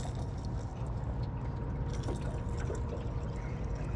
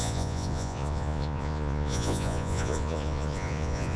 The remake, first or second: second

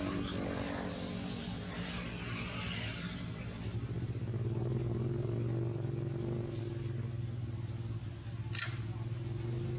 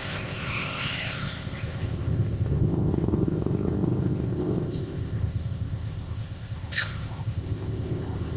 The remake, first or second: second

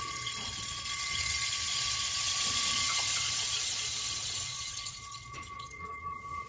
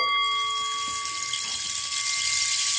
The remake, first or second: first